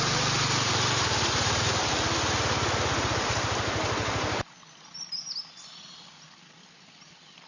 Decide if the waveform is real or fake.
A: real